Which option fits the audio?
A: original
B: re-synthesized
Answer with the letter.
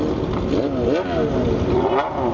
A